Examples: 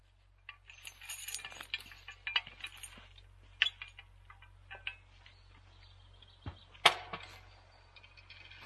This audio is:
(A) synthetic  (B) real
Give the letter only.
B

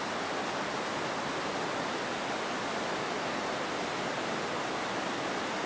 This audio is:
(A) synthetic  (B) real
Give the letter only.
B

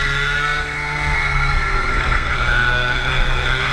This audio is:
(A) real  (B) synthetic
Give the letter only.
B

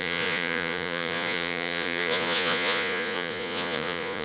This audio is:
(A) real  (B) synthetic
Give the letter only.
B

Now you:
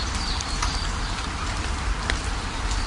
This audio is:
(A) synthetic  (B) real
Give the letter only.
A